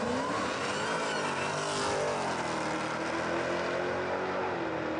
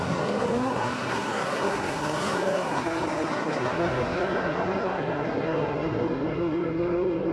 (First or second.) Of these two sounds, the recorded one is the first